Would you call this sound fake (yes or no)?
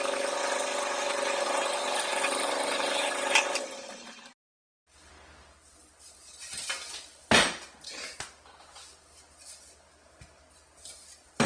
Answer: no